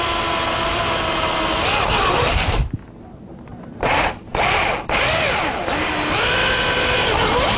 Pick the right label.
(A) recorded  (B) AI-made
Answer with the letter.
A